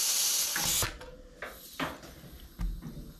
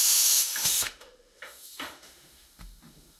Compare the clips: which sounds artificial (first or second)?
second